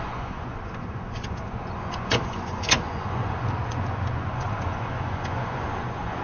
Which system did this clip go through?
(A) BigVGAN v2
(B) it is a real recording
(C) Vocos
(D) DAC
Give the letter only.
C